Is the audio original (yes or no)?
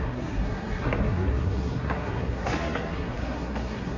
no